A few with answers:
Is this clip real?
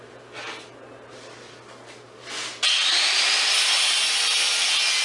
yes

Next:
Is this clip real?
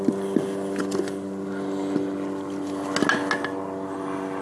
yes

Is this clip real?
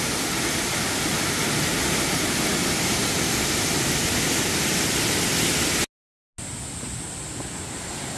yes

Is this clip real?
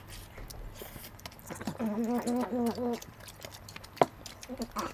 yes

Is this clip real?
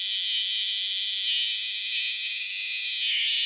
yes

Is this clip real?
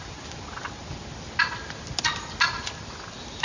yes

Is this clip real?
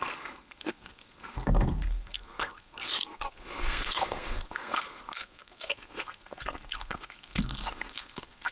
no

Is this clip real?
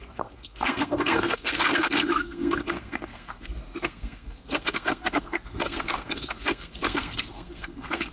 no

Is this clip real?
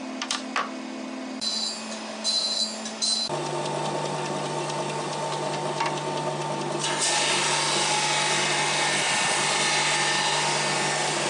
yes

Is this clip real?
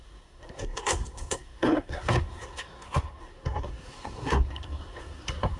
no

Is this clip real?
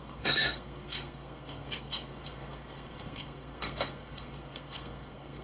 no